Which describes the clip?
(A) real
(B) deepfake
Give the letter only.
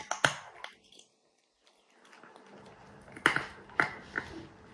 A